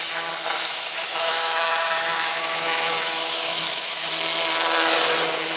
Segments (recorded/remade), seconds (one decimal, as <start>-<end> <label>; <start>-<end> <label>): 0.0-0.7 recorded; 0.7-4.1 remade; 4.1-5.6 recorded